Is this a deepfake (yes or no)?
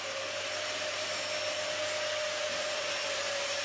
no